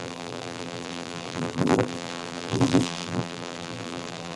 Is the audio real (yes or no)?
no